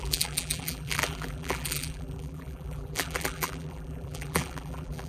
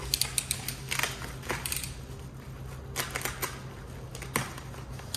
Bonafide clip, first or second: second